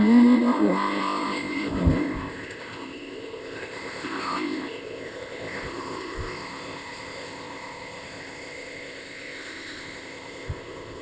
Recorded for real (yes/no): no